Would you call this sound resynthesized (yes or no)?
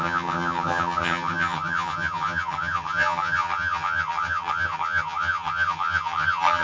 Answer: yes